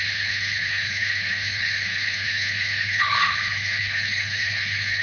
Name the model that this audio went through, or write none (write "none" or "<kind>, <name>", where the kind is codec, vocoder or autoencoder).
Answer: codec, HILCodec